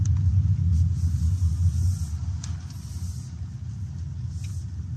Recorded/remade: recorded